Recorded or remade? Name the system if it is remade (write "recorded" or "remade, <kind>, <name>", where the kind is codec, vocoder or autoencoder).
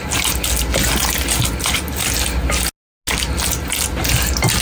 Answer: recorded